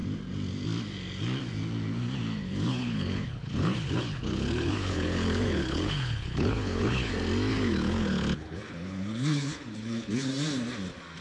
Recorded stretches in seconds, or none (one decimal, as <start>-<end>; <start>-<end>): 0.0-2.4; 7.1-7.5; 10.3-11.2